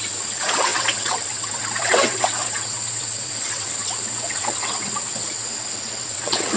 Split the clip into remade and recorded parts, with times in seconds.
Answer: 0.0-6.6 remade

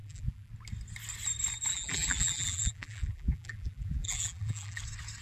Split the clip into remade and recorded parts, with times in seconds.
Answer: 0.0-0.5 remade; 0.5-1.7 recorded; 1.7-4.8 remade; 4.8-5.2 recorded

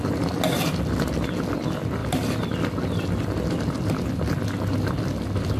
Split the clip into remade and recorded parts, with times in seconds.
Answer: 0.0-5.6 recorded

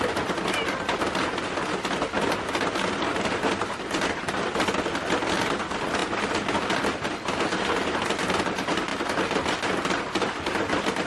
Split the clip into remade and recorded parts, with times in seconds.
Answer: 0.0-11.1 recorded

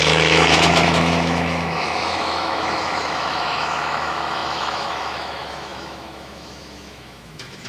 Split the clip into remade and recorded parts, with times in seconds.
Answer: 0.0-7.7 remade

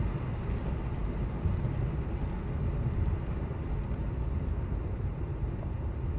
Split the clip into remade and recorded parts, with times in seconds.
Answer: 0.0-6.2 recorded